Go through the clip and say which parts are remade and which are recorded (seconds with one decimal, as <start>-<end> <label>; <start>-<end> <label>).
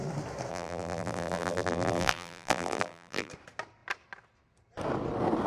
0.0-0.5 recorded; 0.5-3.3 remade; 3.3-5.5 recorded